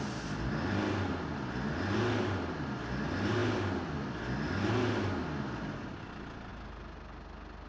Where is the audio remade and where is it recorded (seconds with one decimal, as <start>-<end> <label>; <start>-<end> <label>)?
0.0-7.7 recorded